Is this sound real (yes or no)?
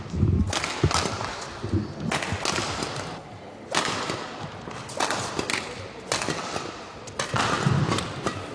yes